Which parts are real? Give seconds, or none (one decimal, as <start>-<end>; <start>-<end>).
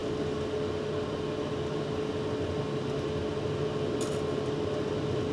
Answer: 0.0-5.3